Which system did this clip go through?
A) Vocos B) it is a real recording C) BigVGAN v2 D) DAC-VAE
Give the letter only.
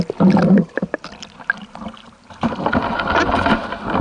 B